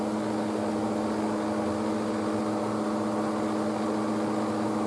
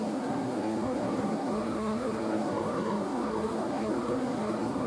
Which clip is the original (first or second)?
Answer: first